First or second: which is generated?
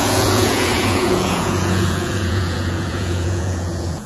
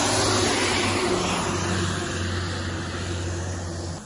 first